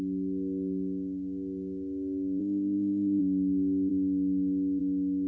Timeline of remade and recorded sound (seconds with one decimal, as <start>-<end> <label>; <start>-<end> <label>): 0.0-2.4 recorded; 2.4-3.2 remade; 3.2-5.3 recorded